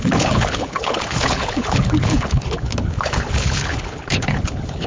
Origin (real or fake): fake